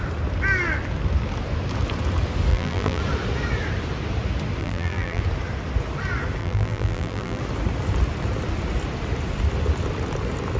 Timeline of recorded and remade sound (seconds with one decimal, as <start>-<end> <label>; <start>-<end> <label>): 0.0-2.5 recorded; 2.5-3.0 remade; 3.0-4.6 recorded; 4.6-5.2 remade; 5.2-6.4 recorded; 6.4-7.4 remade; 7.4-10.6 recorded